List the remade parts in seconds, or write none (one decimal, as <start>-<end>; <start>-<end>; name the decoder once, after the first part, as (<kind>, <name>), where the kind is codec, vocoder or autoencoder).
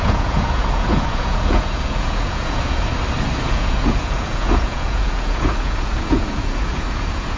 0.0-2.9 (vocoder, Vocos); 3.4-7.4